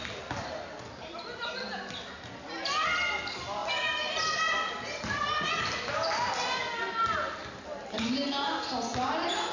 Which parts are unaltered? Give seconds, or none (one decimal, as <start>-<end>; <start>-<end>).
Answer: 0.0-9.5